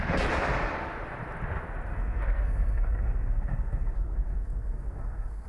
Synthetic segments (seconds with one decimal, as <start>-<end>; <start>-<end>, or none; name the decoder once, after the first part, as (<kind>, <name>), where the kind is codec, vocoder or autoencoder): 1.9-5.5 (codec, SNAC)